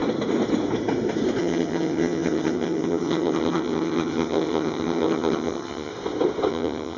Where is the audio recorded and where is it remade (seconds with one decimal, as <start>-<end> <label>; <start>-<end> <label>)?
0.0-1.4 recorded; 1.4-5.9 remade; 5.9-6.5 recorded; 6.5-7.0 remade

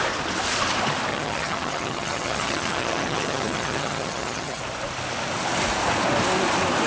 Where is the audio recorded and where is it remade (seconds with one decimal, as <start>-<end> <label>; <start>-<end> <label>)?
0.0-1.1 recorded; 1.1-4.6 remade; 4.6-6.9 recorded

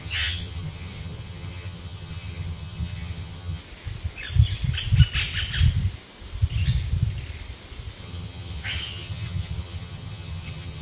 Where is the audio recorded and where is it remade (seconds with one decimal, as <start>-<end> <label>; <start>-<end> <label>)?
0.0-3.6 remade; 3.6-8.0 recorded; 8.0-10.8 remade

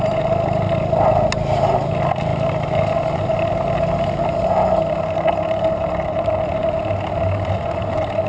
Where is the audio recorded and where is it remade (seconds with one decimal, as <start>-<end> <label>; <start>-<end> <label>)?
0.0-8.3 recorded

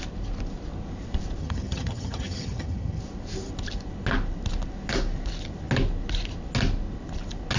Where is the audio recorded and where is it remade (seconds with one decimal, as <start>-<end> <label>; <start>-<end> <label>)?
0.0-1.4 recorded; 1.4-3.0 remade; 3.0-7.6 recorded

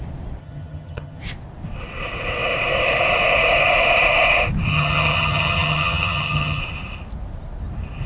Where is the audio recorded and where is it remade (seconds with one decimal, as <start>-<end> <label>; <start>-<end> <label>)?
0.0-0.4 recorded; 0.4-1.2 remade; 1.2-4.7 recorded; 4.7-6.6 remade; 6.6-8.1 recorded

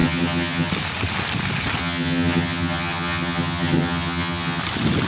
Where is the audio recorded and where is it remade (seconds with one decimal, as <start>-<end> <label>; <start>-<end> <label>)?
0.0-0.7 remade; 0.7-1.8 recorded; 1.8-4.6 remade; 4.6-5.1 recorded

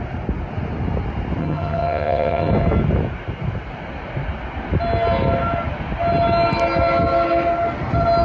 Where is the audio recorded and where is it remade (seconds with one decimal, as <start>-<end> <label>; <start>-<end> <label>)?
0.0-1.4 recorded; 1.4-2.5 remade; 2.5-8.2 recorded